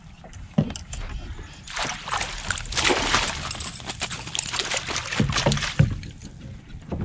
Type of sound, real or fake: real